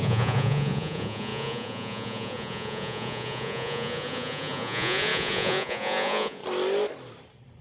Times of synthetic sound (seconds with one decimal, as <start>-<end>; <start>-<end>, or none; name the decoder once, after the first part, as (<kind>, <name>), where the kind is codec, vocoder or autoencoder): 0.0-6.4 (vocoder, Vocos)